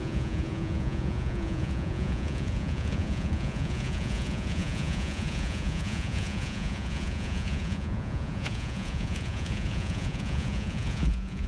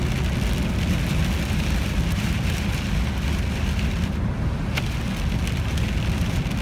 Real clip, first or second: second